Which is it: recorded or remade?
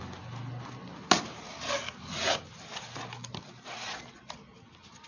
recorded